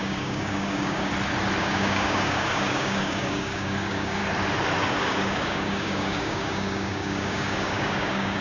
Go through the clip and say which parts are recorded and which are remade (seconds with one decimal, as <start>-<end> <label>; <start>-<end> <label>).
0.0-1.1 remade; 1.1-1.6 recorded; 1.6-4.2 remade; 4.2-4.9 recorded; 4.9-8.4 remade